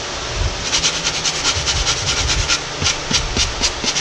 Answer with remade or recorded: recorded